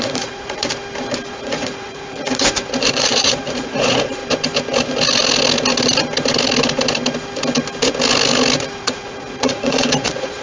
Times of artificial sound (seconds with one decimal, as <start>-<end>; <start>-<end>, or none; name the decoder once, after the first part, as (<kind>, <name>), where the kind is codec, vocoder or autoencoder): 0.0-0.7 (vocoder, Vocos); 1.3-4.2; 8.8-10.4